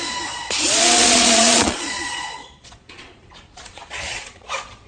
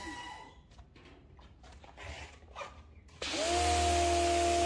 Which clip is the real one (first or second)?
second